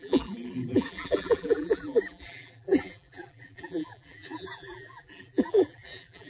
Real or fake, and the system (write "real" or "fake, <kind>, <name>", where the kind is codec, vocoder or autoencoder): fake, vocoder, BigVGAN v2